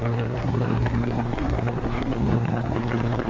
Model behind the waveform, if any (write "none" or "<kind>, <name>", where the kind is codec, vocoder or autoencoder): codec, SNAC